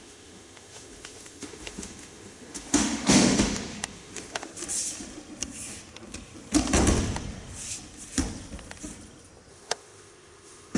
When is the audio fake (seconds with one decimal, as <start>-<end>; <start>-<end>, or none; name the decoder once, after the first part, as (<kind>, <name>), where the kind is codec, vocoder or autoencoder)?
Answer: 0.0-4.5 (autoencoder, DAC-VAE); 9.5-10.8

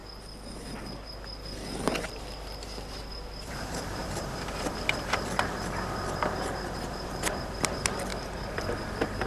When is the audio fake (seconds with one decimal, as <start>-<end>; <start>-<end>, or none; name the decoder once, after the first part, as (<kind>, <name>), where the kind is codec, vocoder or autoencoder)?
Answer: 2.1-8.1 (vocoder, BigVGAN v2); 8.8-9.3

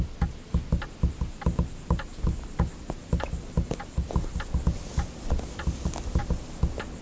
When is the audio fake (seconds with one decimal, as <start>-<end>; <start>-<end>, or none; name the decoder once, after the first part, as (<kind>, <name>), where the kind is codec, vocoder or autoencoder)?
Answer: none

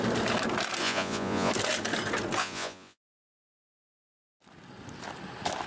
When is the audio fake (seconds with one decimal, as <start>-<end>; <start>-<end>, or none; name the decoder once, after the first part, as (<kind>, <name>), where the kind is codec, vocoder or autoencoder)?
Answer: 0.8-1.5 (vocoder, Vocos); 2.4-4.4

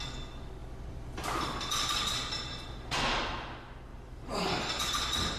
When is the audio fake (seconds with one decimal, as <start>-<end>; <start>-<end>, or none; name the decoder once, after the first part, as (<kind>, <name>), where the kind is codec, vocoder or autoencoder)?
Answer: 0.6-3.0 (vocoder, BigVGAN v2); 3.9-4.9

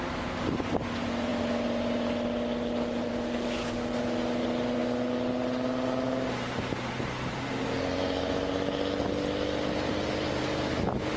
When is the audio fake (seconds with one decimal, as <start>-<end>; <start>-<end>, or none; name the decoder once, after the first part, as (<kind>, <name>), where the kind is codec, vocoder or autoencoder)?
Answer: none